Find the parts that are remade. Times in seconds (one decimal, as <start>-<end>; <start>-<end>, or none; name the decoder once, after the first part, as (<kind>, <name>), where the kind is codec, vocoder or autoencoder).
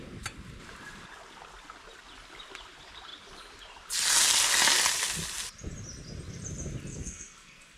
6.9-7.8 (codec, SNAC)